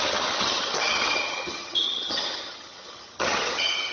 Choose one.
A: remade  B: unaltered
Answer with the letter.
A